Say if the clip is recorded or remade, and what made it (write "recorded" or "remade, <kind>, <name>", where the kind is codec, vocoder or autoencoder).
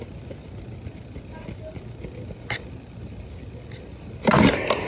recorded